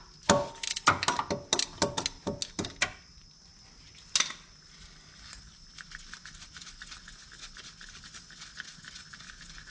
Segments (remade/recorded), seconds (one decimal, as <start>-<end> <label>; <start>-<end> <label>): 0.0-9.7 recorded